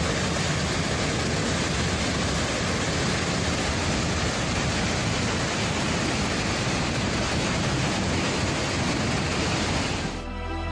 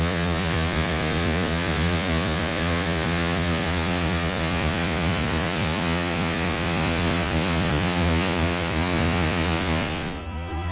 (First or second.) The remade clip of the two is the second